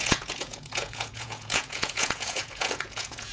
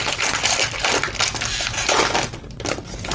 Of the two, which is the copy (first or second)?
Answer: first